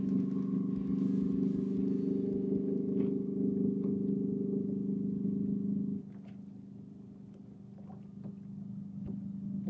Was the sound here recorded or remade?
recorded